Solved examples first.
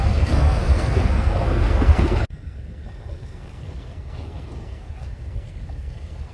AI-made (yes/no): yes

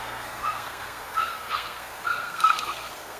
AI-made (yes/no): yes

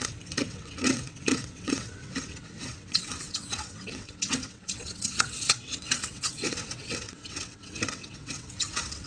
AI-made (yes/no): yes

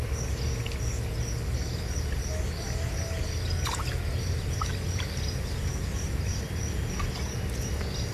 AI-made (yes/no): no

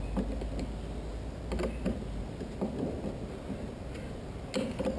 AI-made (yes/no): no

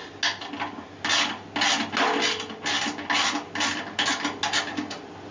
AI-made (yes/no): no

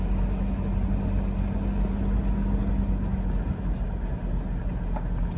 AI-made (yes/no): no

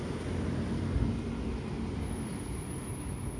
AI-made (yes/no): no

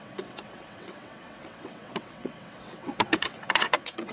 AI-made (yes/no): yes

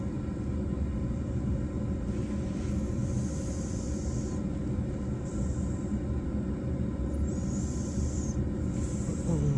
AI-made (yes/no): no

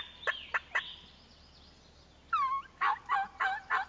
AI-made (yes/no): no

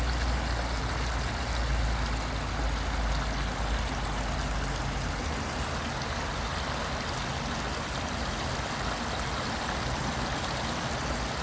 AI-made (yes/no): no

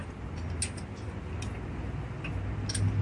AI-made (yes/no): no